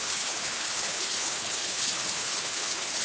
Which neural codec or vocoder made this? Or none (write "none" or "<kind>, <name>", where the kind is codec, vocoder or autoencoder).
codec, HILCodec